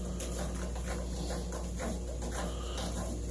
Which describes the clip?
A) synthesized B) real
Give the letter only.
B